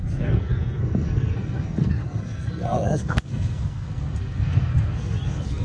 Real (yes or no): no